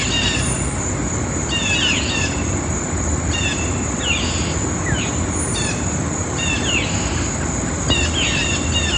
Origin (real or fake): real